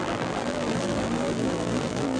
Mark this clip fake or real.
fake